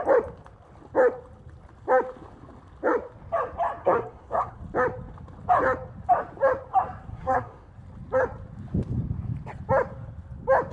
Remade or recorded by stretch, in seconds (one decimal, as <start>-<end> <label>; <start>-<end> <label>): 0.0-3.8 recorded; 3.8-4.6 remade; 4.6-7.1 recorded; 7.1-7.7 remade; 7.7-10.7 recorded